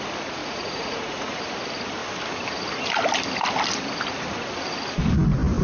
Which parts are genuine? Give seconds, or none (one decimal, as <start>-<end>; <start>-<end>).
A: 0.0-0.4; 1.4-5.6